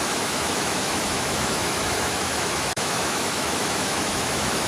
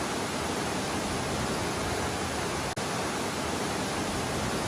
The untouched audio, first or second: second